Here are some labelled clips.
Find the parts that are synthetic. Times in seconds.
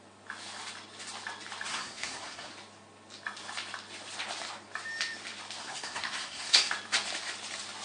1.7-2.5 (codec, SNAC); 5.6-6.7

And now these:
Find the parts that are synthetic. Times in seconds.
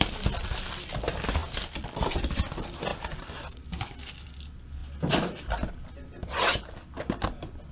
2.9-4.1 (vocoder, BigVGAN v2)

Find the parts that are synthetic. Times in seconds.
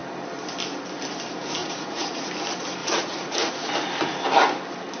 1.6-2.3 (vocoder, Vocos); 2.8-3.7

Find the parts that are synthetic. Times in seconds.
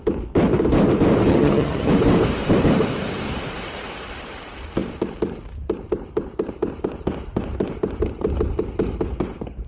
1.3-1.9 (vocoder, HiFi-GAN)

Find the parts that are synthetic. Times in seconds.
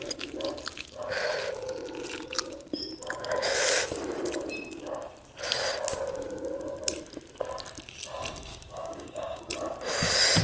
8.5-9.4 (codec, DAC)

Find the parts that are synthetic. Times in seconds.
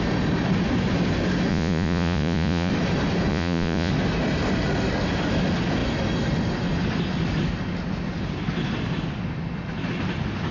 1.5-2.7 (vocoder, Vocos); 3.3-3.9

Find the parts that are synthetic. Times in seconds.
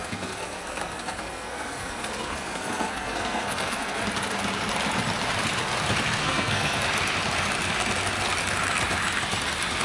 0.0-4.0 (codec, SNAC); 6.2-6.8